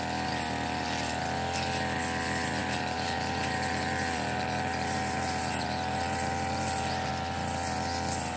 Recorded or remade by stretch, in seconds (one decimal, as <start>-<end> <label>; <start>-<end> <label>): 0.0-2.6 recorded; 2.6-7.1 remade; 7.1-8.4 recorded